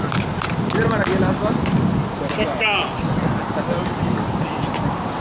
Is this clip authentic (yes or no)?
yes